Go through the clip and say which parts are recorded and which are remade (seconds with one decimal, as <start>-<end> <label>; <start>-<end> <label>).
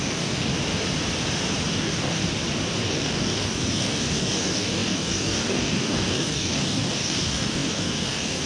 0.0-0.5 remade; 0.5-1.7 recorded; 1.7-2.2 remade; 2.2-2.8 recorded; 2.8-8.5 remade